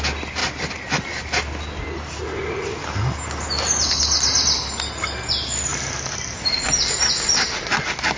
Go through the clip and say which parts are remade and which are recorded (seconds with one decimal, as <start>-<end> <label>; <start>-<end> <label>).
0.0-8.2 recorded